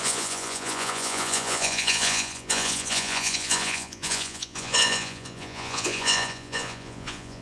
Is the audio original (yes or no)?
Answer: no